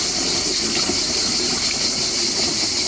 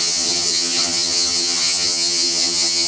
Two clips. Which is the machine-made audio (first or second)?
second